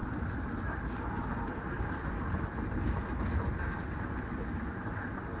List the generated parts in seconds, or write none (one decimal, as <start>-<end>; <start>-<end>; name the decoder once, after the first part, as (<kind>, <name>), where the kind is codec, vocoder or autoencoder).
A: none